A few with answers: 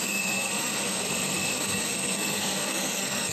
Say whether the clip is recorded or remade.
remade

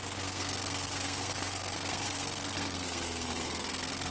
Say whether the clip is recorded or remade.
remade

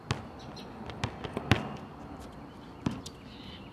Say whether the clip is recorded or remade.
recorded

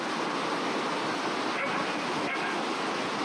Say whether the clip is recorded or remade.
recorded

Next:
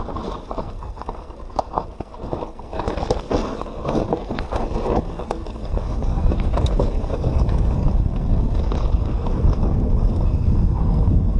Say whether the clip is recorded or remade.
remade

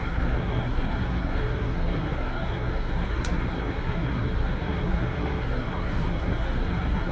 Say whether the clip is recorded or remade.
remade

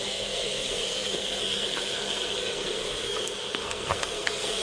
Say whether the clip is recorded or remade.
remade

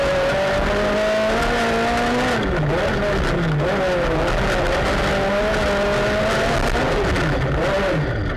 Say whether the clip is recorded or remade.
recorded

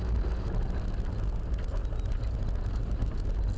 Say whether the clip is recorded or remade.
recorded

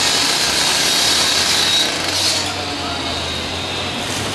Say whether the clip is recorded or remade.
recorded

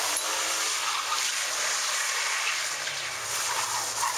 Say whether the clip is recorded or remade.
recorded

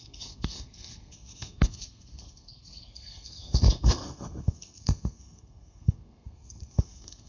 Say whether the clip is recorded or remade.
remade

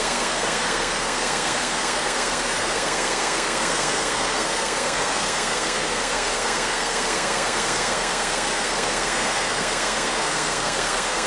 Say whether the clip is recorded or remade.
remade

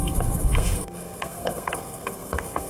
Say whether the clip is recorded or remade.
remade